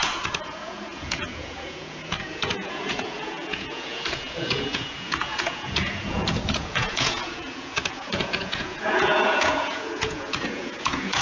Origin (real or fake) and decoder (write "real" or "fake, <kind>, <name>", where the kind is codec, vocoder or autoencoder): fake, vocoder, Vocos